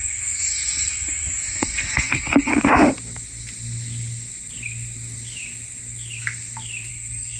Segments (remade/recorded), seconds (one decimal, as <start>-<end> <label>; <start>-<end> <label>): 0.0-2.5 remade; 2.5-6.9 recorded; 6.9-7.4 remade